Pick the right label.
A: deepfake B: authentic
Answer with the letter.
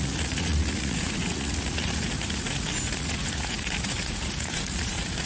A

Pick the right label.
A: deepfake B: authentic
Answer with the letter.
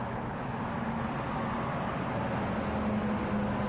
B